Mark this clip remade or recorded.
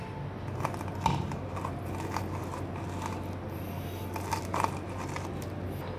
recorded